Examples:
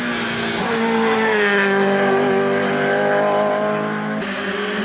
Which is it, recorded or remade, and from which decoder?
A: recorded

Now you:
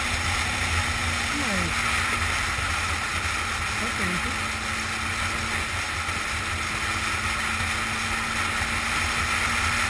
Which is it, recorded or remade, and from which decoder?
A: recorded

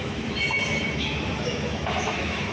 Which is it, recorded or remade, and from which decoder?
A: remade, autoencoder, DAC-VAE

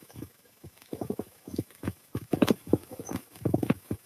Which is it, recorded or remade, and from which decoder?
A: remade, autoencoder, DAC-VAE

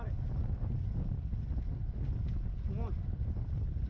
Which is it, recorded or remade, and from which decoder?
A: recorded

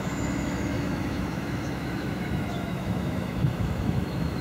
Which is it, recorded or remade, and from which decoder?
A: remade, autoencoder, DAC-VAE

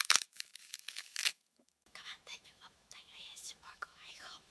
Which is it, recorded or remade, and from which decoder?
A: remade, autoencoder, DAC-VAE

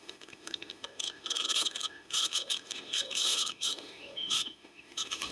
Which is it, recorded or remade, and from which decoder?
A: remade, autoencoder, DAC-VAE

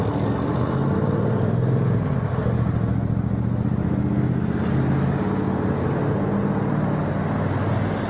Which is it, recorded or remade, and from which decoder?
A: recorded